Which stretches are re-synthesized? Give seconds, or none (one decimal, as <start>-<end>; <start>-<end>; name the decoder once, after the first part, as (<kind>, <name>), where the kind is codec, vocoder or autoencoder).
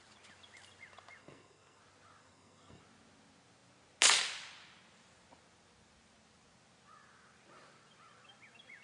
1.2-1.8 (codec, SNAC); 2.2-2.8